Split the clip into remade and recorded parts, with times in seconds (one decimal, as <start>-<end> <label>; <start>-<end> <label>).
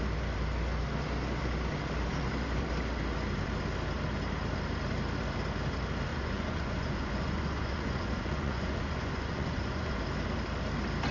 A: 0.0-6.1 recorded; 6.1-10.0 remade; 10.0-11.1 recorded